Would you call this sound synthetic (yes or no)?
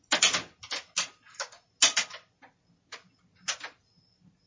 no